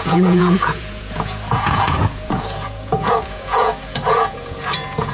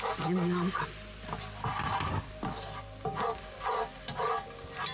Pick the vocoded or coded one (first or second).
first